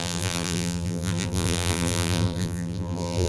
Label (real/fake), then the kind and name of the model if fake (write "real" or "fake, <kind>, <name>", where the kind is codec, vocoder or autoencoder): fake, vocoder, BigVGAN v2